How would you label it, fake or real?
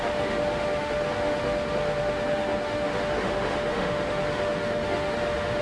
fake